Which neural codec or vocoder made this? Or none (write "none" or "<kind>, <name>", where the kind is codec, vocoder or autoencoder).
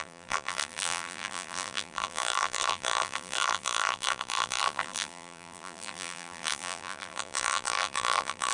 vocoder, BigVGAN v2